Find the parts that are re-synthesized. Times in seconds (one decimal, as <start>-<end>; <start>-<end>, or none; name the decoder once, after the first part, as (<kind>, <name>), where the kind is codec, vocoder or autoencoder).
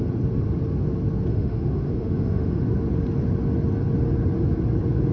1.3-2.6 (autoencoder, DAC-VAE)